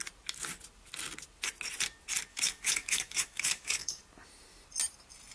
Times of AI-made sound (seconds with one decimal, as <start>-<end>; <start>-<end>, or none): 2.3-4.0